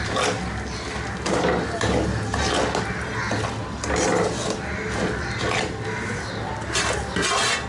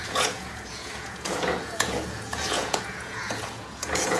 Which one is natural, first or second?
first